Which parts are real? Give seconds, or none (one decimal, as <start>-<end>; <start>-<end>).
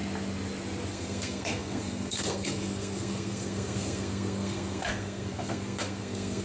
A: 0.0-0.9